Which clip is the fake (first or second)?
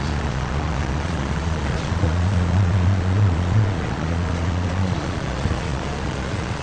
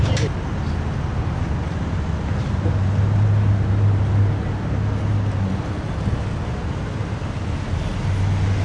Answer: first